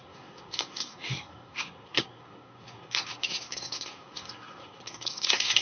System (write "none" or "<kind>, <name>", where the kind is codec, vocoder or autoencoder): codec, SNAC